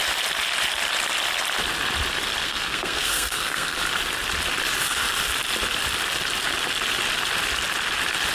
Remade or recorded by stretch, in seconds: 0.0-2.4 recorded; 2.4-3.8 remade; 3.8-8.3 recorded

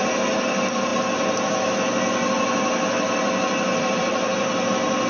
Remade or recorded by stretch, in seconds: 0.0-5.1 recorded

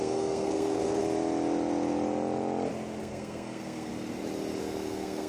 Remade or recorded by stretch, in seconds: 0.0-1.0 remade; 1.0-3.0 recorded; 3.0-3.9 remade; 3.9-4.6 recorded; 4.6-5.3 remade

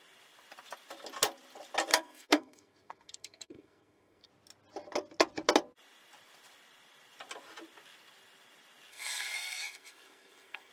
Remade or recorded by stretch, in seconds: 0.0-1.9 recorded; 1.9-4.3 remade; 4.3-8.9 recorded; 8.9-10.7 remade